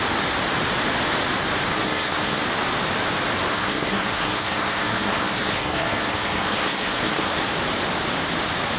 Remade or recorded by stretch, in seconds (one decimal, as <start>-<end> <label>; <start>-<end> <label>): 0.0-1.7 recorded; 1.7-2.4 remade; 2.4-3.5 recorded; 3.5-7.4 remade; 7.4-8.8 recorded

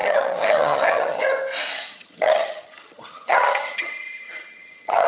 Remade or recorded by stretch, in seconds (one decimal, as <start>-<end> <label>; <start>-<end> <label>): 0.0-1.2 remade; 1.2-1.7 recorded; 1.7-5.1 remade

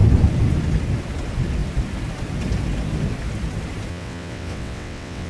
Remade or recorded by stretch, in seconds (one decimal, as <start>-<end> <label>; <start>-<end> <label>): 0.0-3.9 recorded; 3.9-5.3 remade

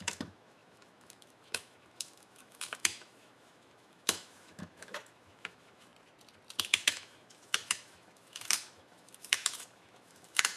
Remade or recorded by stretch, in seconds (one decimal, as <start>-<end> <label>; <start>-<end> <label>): 0.0-5.9 remade; 5.9-6.6 recorded; 6.6-10.6 remade